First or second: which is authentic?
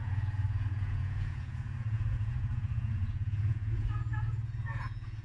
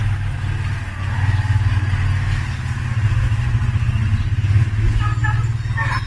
second